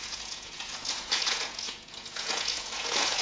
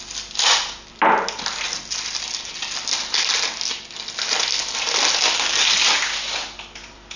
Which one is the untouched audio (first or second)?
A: second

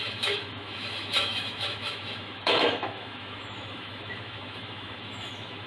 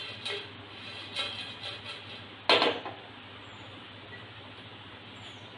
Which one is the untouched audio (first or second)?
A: second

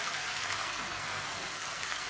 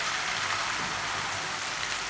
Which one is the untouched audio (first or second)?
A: second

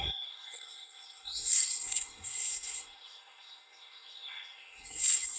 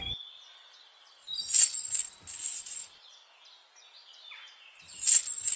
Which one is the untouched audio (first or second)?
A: second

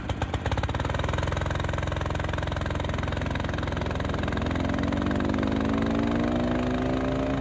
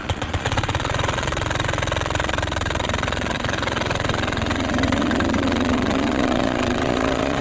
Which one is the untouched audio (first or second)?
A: first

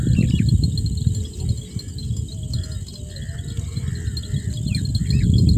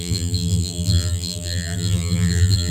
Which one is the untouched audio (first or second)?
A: first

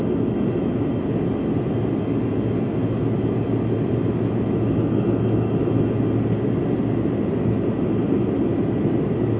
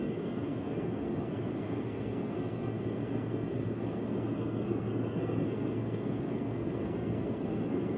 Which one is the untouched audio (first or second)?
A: first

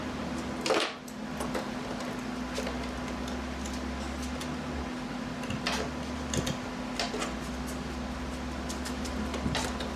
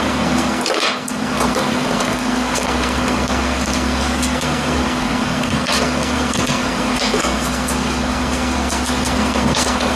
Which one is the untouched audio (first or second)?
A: first